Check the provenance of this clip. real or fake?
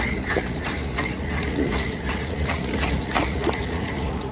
fake